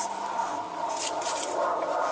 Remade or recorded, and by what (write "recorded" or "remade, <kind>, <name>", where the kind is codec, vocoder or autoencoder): recorded